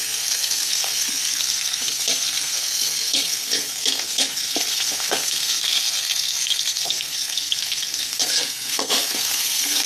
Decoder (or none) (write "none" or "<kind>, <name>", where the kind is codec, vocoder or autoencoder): codec, SNAC